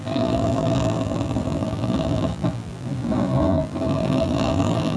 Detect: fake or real fake